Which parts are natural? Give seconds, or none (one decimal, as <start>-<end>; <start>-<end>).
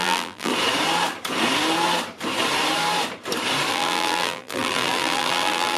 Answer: 0.5-3.7